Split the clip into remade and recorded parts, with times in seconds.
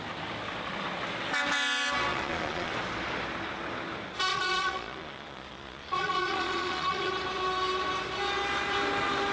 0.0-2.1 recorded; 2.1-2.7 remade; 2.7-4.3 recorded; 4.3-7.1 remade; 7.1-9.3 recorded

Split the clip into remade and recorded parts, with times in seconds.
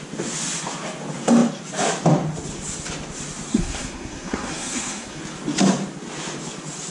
0.0-3.5 recorded; 3.5-5.2 remade; 5.2-6.9 recorded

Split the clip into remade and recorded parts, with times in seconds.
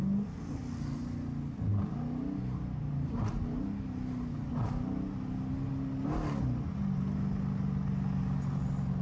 0.0-9.0 recorded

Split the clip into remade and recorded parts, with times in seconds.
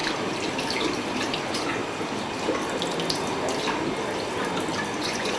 0.0-1.4 recorded; 1.4-1.8 remade; 1.8-5.0 recorded; 5.0-5.4 remade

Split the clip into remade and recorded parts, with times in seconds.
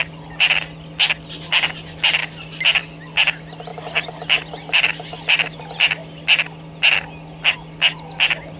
0.0-8.6 recorded